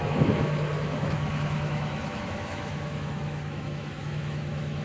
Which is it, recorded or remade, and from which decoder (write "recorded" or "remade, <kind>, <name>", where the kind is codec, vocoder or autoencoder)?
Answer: remade, autoencoder, DAC-VAE